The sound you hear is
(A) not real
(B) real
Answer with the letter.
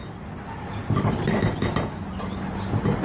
B